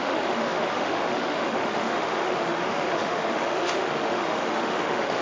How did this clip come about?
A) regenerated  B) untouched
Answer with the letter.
A